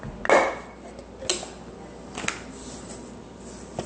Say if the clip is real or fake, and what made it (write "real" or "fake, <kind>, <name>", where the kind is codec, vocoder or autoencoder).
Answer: real